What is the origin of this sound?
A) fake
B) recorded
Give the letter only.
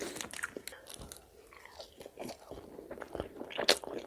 B